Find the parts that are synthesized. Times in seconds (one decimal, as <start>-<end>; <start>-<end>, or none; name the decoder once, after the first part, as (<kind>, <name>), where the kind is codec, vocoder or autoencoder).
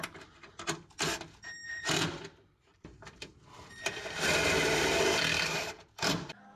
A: 1.6-4.4 (vocoder, BigVGAN v2)